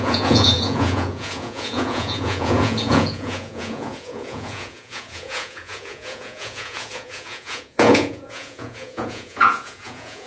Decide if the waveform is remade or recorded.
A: remade